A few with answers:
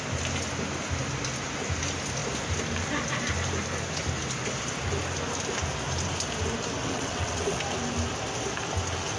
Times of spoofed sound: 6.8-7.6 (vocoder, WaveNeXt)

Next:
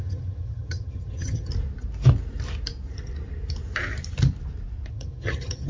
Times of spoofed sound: 0.0-1.5 (vocoder, HiFi-GAN); 4.9-5.7